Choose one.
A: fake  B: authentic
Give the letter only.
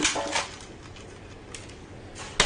B